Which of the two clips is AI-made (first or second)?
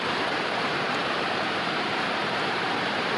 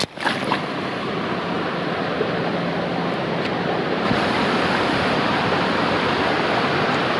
first